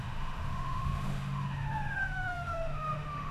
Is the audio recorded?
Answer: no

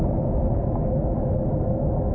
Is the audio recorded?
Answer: yes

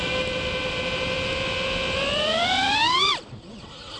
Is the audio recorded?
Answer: yes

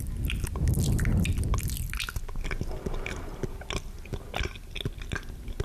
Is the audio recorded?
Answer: yes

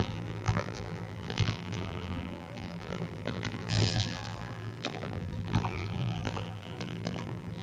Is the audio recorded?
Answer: no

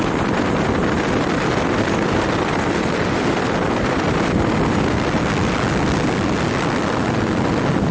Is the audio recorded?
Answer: yes